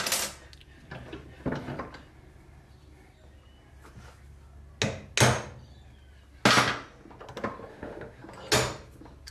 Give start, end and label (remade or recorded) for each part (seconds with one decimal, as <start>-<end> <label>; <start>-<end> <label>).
0.0-7.7 recorded; 7.7-8.2 remade; 8.2-9.3 recorded